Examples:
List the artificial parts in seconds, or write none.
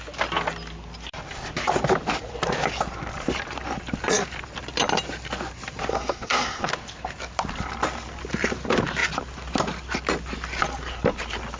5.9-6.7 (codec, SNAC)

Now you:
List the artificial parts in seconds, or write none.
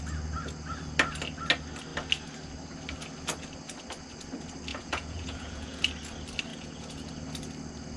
4.7-5.8 (vocoder, Vocos); 6.5-7.1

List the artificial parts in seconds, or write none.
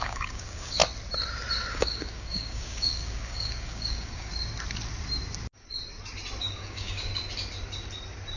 0.0-0.8 (codec, DAC); 1.7-4.3; 6.4-7.1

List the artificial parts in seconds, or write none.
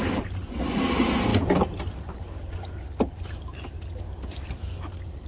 none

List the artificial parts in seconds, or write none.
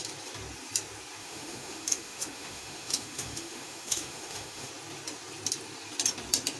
1.2-4.7 (autoencoder, DAC-VAE)